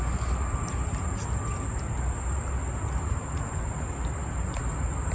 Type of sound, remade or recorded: recorded